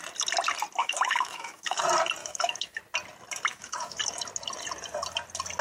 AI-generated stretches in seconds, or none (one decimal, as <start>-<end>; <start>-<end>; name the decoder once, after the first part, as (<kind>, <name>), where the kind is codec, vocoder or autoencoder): 0.8-1.8 (autoencoder, DAC-VAE); 2.2-2.8; 3.5-4.0